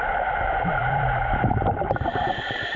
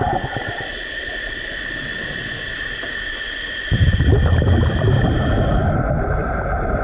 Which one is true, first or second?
second